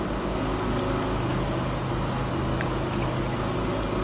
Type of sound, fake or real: real